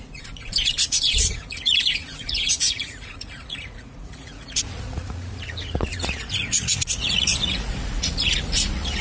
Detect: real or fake fake